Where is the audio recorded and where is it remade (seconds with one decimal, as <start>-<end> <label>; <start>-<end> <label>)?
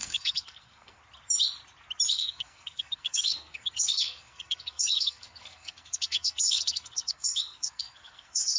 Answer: 0.0-1.0 remade; 1.0-2.1 recorded; 2.1-8.6 remade